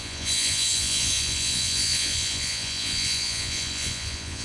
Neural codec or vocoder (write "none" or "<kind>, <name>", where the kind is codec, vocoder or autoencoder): vocoder, Vocos